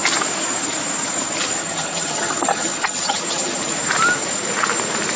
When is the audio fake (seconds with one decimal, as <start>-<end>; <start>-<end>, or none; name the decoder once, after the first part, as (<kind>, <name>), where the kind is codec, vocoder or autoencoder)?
1.6-3.6 (vocoder, HiFi-GAN)